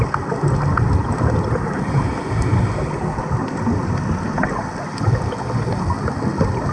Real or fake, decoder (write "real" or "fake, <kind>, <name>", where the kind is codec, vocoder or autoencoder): real